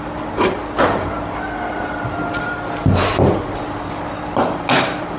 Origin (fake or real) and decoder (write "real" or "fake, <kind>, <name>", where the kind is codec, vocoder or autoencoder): real